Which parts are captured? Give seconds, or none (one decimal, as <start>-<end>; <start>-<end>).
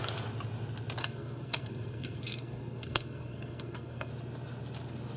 0.0-1.0; 4.1-5.2